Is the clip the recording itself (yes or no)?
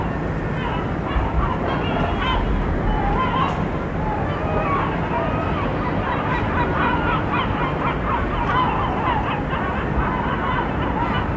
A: yes